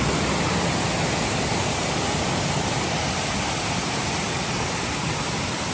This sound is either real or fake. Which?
real